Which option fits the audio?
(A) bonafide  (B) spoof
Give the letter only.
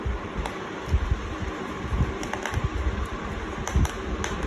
A